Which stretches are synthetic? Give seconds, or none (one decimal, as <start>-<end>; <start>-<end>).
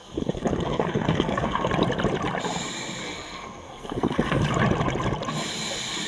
0.0-1.7; 3.0-4.4